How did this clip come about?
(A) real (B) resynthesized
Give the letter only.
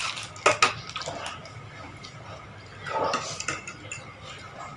A